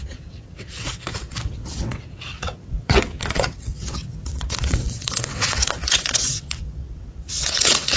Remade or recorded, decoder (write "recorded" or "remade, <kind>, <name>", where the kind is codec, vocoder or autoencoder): remade, vocoder, WaveNeXt